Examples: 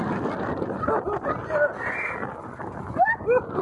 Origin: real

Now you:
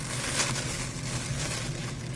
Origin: real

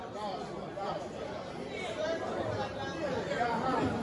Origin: fake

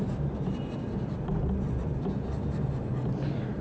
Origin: fake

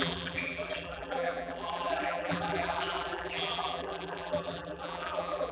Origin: fake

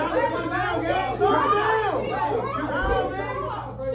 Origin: real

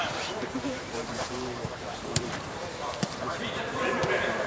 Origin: fake